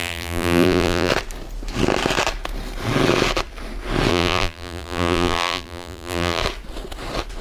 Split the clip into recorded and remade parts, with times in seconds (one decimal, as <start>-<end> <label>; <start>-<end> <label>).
0.0-1.1 remade; 1.1-4.1 recorded; 4.1-6.4 remade; 6.4-7.4 recorded